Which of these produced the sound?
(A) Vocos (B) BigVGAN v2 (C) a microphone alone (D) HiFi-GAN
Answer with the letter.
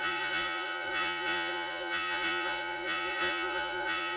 A